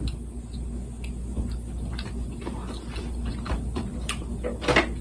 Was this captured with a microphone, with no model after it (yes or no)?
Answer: yes